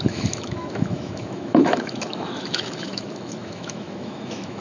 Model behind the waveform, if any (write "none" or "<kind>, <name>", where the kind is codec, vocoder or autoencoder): autoencoder, DAC-VAE